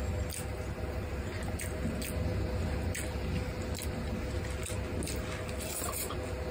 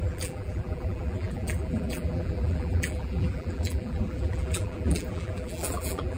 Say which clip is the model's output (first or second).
second